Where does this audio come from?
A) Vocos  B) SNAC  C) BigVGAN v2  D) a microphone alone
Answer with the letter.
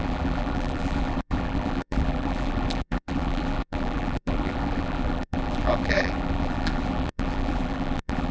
C